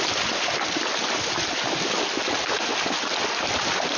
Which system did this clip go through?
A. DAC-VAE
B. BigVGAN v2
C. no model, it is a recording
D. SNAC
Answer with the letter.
C